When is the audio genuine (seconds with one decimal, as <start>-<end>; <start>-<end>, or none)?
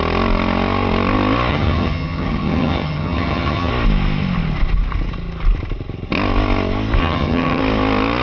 0.0-1.5; 3.7-7.0; 7.6-8.2